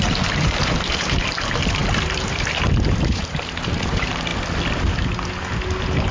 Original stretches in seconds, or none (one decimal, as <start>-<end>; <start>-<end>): 4.3-6.1